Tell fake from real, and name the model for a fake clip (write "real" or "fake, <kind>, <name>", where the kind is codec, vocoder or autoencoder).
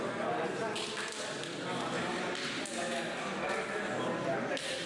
real